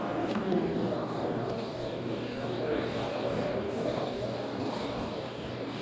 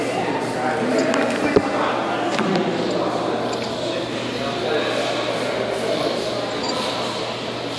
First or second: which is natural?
second